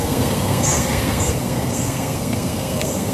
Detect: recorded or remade remade